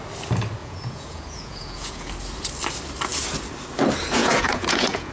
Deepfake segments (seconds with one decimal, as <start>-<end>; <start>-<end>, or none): 0.6-2.1; 4.2-5.1